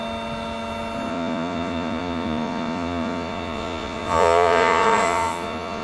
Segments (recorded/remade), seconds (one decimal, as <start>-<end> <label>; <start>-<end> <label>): 0.0-1.1 recorded; 1.1-5.8 remade